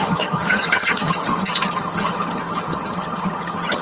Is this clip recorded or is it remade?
remade